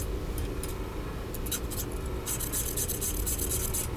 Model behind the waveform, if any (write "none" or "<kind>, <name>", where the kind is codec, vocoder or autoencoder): none